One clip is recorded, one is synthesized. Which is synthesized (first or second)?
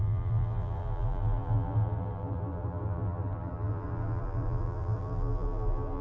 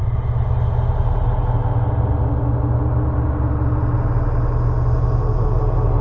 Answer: first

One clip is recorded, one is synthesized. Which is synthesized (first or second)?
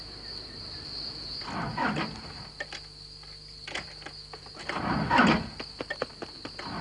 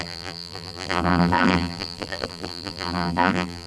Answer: second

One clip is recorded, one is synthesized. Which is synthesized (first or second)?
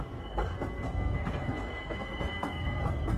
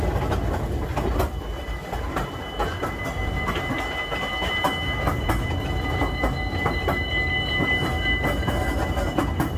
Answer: first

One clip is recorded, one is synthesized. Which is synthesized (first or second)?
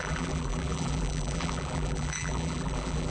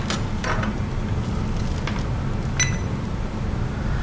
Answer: first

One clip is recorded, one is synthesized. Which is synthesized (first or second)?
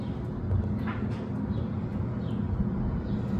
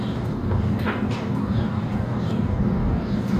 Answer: second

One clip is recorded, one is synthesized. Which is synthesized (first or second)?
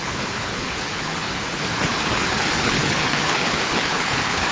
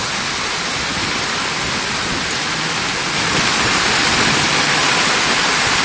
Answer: first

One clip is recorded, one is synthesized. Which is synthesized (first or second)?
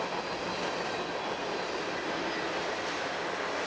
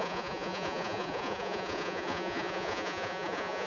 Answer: second